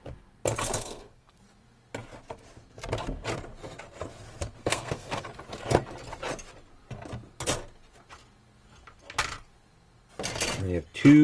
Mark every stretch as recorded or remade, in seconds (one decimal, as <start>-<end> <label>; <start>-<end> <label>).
0.0-0.8 recorded; 0.8-1.4 remade; 1.4-4.6 recorded; 4.6-5.2 remade; 5.2-11.2 recorded

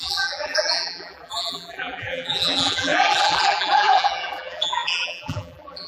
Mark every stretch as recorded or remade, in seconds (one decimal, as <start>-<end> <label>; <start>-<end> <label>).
0.0-5.9 remade

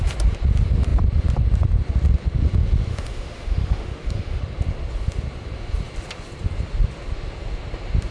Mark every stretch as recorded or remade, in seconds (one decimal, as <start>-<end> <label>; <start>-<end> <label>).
0.0-2.9 recorded; 2.9-4.4 remade; 4.4-8.1 recorded

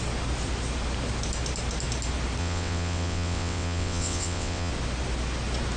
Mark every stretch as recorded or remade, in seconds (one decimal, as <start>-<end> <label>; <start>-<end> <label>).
0.0-2.4 recorded; 2.4-4.7 remade; 4.7-5.8 recorded

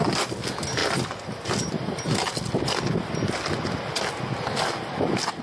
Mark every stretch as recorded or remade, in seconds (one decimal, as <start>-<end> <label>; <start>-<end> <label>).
0.0-5.4 recorded

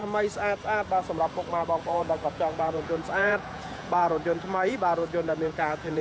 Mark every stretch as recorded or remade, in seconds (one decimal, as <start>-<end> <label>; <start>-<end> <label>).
0.0-1.8 recorded; 1.8-6.0 remade

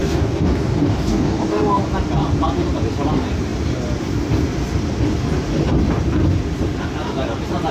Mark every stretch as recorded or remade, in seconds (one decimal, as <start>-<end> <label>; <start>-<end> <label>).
0.0-1.8 remade; 1.8-7.7 recorded